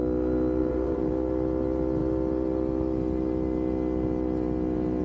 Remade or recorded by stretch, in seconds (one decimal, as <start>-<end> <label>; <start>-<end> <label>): 0.0-0.6 recorded; 0.6-1.1 remade; 1.1-5.0 recorded